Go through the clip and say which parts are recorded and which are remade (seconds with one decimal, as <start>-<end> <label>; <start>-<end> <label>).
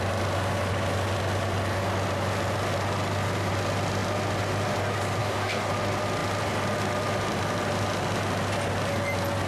0.0-5.2 recorded; 5.2-5.7 remade; 5.7-9.5 recorded